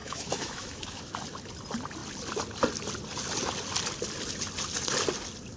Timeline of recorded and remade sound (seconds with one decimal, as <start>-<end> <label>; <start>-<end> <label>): 0.0-1.1 remade; 1.1-5.6 recorded